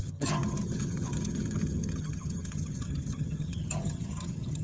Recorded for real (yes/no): no